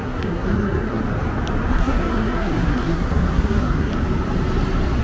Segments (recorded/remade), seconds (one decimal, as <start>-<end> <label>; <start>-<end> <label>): 0.0-1.0 remade; 1.0-1.7 recorded; 1.7-3.9 remade; 3.9-5.0 recorded